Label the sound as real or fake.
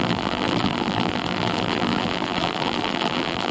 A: fake